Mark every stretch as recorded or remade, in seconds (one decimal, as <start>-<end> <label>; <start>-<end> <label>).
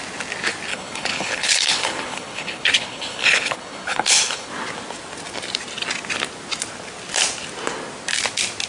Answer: 0.0-0.7 recorded; 0.7-4.5 remade; 4.5-8.7 recorded